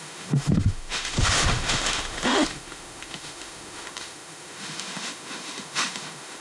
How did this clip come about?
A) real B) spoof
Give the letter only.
B